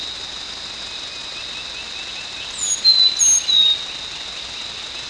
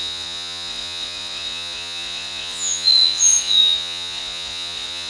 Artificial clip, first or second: second